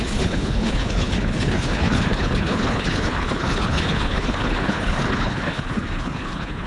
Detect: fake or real fake